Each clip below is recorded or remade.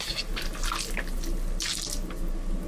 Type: recorded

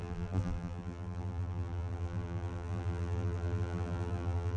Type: remade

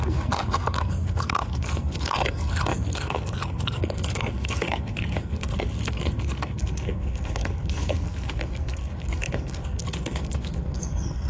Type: remade